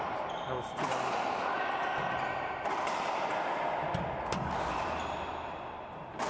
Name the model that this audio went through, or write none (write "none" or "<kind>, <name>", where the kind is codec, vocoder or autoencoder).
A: none